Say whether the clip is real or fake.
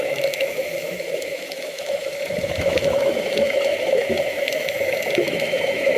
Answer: fake